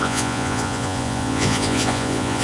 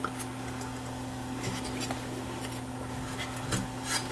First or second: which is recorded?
second